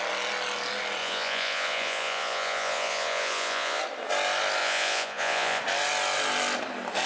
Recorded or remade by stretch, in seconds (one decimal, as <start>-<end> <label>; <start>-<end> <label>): 0.0-1.0 recorded; 1.0-3.8 remade; 3.8-4.6 recorded; 4.6-5.6 remade; 5.6-7.1 recorded